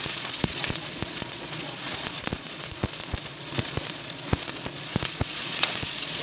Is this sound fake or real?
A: fake